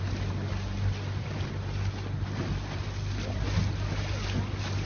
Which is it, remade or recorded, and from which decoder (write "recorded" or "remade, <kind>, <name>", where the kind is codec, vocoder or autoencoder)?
recorded